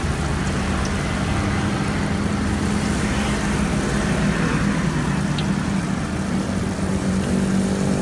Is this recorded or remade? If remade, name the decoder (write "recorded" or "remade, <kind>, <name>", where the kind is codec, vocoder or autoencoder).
recorded